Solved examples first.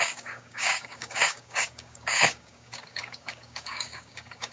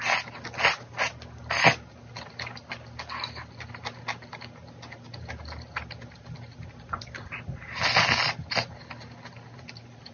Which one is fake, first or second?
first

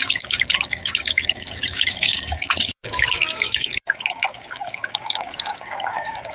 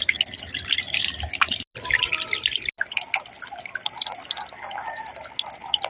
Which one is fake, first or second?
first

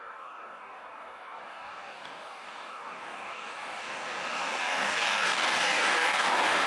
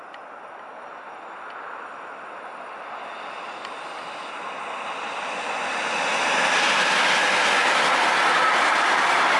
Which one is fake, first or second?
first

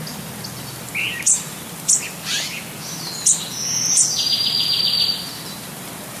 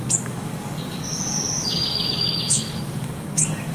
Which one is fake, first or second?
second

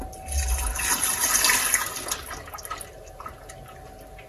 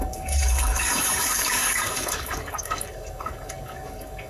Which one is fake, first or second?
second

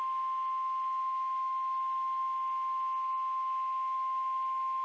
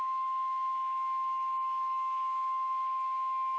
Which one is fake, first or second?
second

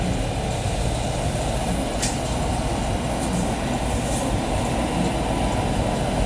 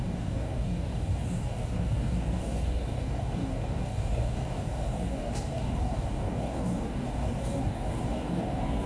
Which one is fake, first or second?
second